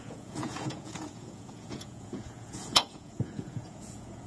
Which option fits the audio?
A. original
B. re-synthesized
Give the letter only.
B